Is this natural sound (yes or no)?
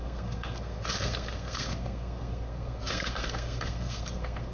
no